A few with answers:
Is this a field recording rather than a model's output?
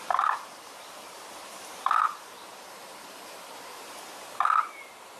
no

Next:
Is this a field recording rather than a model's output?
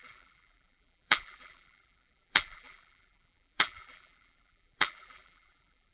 no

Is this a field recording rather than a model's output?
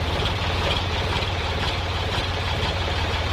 no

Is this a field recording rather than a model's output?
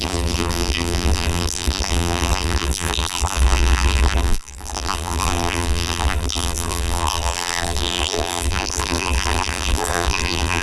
no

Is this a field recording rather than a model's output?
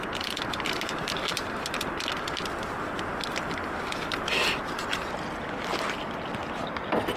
yes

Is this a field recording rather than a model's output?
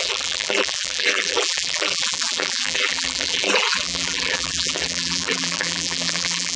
no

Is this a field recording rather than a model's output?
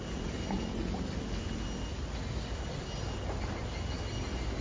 yes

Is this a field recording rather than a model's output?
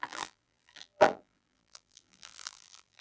no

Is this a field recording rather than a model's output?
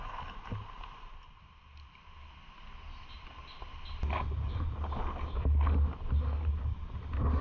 yes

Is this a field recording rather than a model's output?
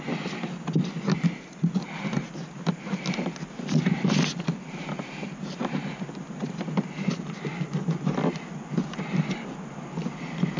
yes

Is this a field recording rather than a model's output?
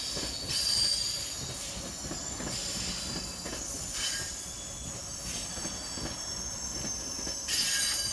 yes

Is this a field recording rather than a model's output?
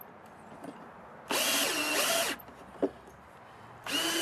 yes